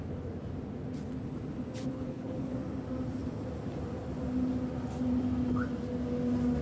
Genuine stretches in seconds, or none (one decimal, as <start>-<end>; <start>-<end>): 0.0-1.9; 2.5-6.6